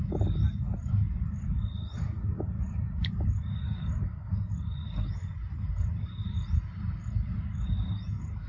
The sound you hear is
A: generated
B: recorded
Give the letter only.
B